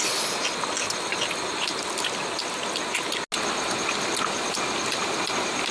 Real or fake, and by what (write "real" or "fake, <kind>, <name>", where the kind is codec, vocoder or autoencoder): real